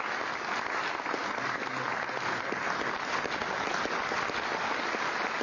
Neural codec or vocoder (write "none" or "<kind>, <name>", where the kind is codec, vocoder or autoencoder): none